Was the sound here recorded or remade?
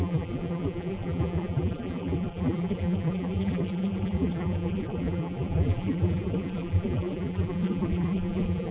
remade